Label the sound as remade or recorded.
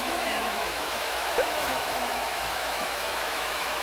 remade